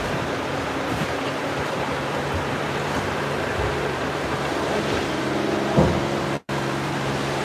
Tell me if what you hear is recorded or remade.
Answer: remade